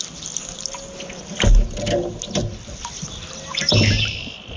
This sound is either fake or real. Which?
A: real